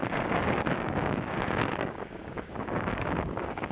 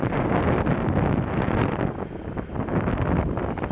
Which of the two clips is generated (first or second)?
first